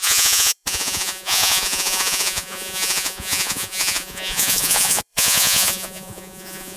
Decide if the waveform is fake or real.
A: fake